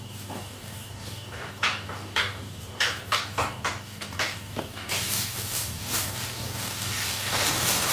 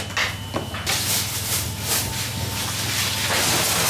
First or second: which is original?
second